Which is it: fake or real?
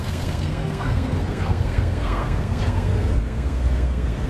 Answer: fake